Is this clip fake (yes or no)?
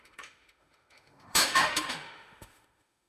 yes